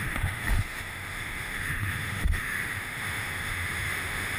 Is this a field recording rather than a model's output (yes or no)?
no